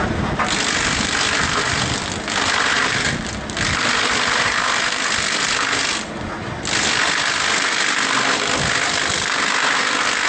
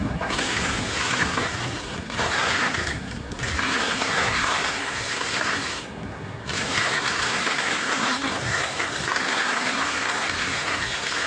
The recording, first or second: first